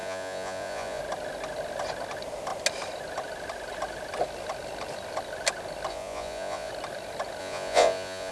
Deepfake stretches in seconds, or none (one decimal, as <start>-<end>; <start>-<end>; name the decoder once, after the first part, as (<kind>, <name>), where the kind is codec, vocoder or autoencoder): 0.0-1.0 (vocoder, Vocos); 5.9-6.7; 7.4-8.3